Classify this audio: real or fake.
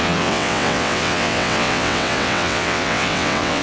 fake